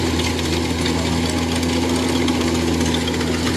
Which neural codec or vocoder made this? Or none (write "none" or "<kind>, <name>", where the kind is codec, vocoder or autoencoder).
none